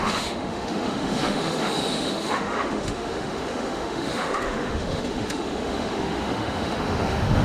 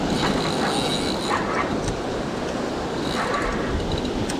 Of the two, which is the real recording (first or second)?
second